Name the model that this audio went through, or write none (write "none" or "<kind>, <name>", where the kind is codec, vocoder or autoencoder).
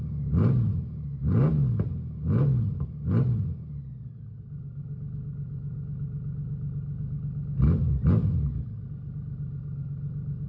none